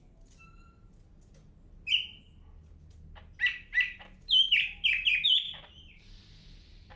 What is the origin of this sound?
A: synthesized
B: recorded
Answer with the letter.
B